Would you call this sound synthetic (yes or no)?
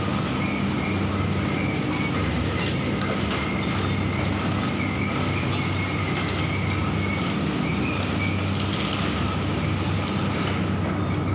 no